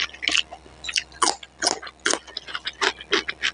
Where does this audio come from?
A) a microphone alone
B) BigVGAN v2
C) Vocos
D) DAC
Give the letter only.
A